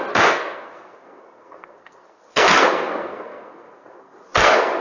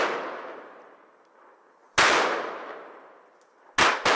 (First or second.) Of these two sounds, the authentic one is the second